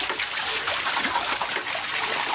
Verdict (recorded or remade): recorded